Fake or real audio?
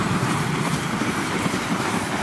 fake